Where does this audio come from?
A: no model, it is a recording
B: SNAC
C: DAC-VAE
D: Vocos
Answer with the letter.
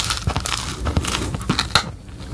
A